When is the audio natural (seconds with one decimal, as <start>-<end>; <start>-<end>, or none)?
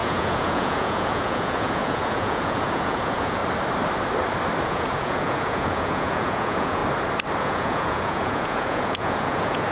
3.4-4.6; 6.8-7.4